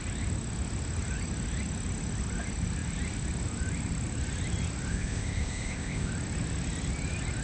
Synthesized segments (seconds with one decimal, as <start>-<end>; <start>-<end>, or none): 4.9-6.1